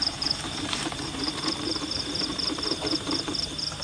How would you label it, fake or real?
fake